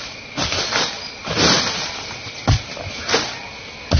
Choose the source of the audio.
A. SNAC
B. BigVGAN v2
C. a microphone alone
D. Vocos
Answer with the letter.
C